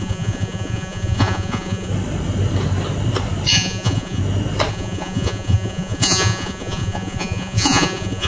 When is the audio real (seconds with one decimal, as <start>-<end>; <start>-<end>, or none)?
1.9-3.5; 4.2-4.7